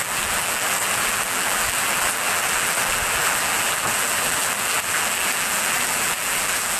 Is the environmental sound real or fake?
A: fake